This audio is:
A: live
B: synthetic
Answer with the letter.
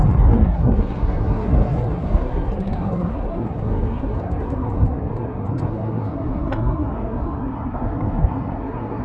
B